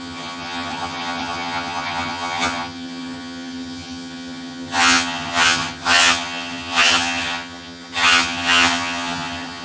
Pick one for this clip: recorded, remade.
remade